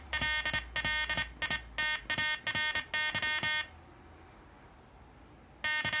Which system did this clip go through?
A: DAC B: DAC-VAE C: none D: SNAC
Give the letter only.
C